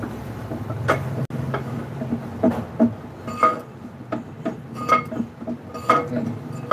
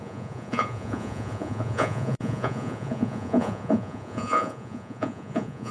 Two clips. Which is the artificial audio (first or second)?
second